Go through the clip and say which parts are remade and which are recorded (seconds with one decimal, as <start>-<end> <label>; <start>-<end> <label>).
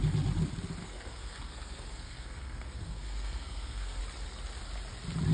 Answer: 0.0-0.8 recorded; 0.8-4.0 remade; 4.0-5.3 recorded